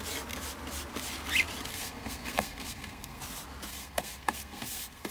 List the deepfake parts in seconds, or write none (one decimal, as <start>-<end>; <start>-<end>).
1.7-3.2; 3.7-5.1